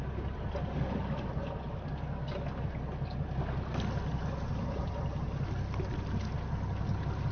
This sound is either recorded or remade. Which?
recorded